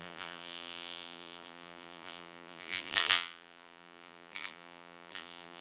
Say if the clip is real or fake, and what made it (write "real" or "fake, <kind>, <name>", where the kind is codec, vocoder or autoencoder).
fake, vocoder, BigVGAN v2